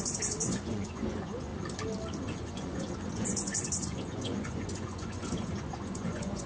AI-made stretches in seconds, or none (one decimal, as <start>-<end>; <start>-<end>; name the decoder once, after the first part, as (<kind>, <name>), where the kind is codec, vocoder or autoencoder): 0.0-1.5 (vocoder, Vocos); 2.2-6.5